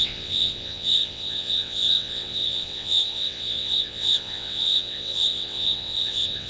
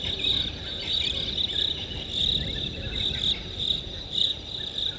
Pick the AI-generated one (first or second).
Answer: first